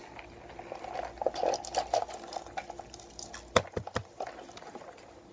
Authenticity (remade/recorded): recorded